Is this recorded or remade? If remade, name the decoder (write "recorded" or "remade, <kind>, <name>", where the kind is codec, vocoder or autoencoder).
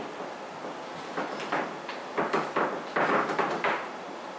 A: recorded